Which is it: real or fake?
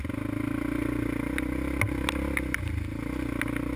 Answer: real